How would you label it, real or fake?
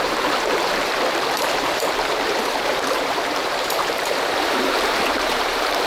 fake